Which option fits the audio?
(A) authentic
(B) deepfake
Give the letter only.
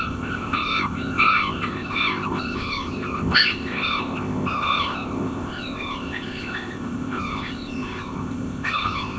B